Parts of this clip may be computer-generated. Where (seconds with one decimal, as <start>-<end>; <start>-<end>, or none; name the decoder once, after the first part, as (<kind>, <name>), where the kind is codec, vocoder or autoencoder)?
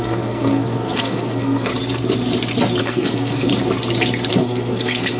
0.0-1.7 (codec, SNAC); 2.8-3.5; 4.3-5.2